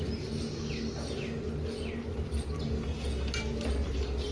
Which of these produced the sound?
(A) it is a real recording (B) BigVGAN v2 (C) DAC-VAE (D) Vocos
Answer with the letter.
A